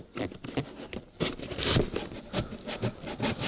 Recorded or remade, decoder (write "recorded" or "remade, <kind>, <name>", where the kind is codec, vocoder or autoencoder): recorded